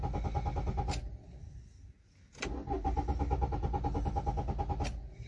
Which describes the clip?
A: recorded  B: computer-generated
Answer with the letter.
A